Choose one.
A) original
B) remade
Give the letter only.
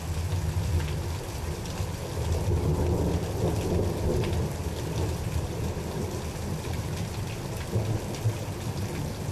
A